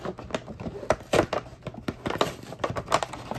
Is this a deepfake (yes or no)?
no